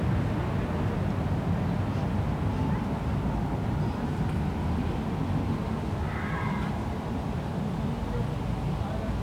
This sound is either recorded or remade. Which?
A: recorded